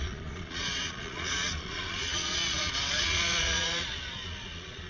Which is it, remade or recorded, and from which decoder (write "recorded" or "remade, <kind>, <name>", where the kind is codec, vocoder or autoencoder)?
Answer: remade, vocoder, Vocos